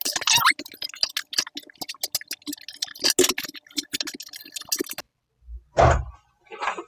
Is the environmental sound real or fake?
real